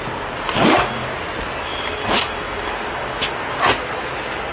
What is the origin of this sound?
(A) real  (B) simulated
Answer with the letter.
A